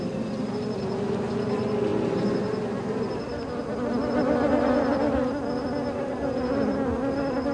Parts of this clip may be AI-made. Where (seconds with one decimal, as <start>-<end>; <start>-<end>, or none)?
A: none